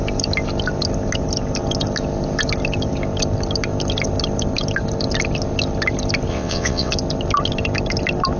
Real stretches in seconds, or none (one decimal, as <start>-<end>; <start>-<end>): 0.0-6.3; 6.9-8.4